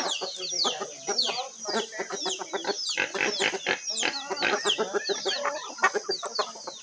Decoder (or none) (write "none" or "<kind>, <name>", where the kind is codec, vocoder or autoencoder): none